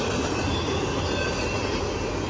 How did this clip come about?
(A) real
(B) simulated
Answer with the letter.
A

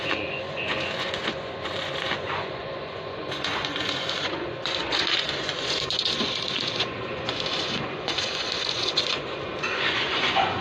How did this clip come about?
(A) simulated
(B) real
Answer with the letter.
A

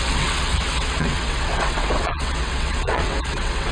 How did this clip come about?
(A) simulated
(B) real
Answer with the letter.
A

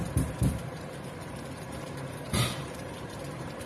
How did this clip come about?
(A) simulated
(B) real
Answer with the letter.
A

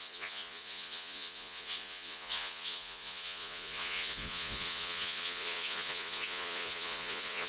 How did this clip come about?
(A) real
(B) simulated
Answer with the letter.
B